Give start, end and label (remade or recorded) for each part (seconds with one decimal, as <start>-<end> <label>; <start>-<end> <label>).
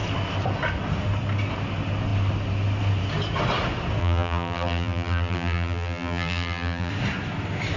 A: 0.0-4.0 recorded; 4.0-6.9 remade; 6.9-7.8 recorded